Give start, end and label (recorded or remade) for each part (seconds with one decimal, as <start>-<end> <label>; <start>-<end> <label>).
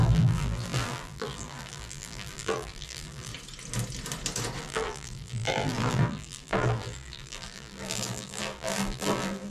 0.0-3.3 remade; 3.3-4.6 recorded; 4.6-9.5 remade